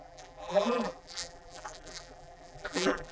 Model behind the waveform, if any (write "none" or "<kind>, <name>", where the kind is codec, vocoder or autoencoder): vocoder, BigVGAN v2